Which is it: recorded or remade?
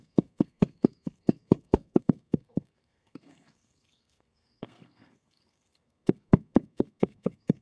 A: remade